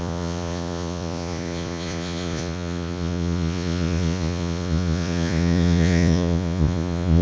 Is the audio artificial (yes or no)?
yes